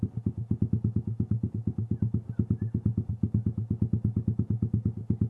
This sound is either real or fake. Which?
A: real